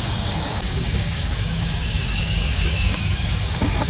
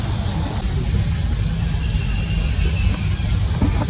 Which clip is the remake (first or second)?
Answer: first